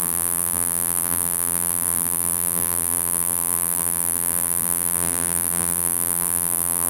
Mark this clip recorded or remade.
remade